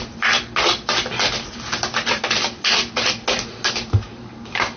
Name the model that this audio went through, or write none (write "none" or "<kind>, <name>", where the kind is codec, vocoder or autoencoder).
none